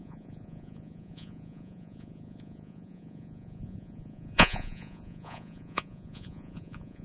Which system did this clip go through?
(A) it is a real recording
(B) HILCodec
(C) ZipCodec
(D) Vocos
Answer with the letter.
D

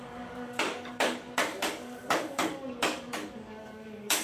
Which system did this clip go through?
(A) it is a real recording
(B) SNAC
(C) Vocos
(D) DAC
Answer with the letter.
D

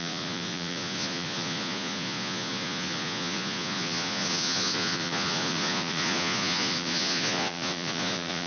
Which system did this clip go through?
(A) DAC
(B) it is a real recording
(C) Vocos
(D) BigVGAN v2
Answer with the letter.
C